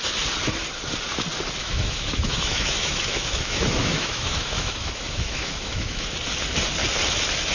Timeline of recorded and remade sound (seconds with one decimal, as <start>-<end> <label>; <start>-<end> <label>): 0.0-1.6 recorded; 1.6-6.1 remade; 6.1-7.5 recorded